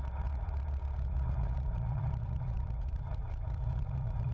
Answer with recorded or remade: remade